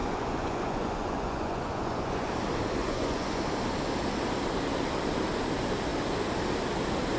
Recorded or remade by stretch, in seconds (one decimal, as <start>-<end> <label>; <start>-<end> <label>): 0.0-2.3 remade; 2.3-2.8 recorded; 2.8-3.4 remade; 3.4-7.2 recorded